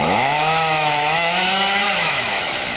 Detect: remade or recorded remade